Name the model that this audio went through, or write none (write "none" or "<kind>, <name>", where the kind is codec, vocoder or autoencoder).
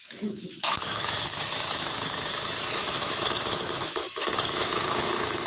autoencoder, DAC-VAE